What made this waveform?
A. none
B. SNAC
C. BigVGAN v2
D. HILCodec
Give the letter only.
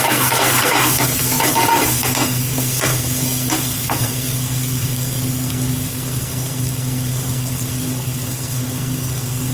B